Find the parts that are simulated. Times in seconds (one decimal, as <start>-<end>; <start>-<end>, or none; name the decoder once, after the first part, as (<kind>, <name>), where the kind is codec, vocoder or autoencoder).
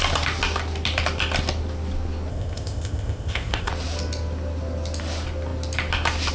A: 2.3-3.7 (codec, ZipCodec)